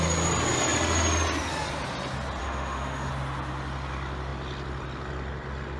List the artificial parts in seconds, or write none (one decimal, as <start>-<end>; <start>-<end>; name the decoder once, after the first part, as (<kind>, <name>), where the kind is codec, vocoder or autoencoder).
2.4-3.1 (autoencoder, DAC-VAE)